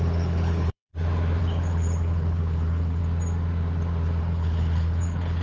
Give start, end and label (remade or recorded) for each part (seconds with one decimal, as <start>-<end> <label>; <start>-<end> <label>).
0.0-0.9 remade; 0.9-1.4 recorded; 1.4-3.0 remade; 3.0-4.2 recorded; 4.2-5.4 remade